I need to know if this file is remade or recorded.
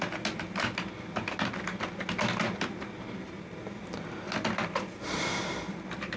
recorded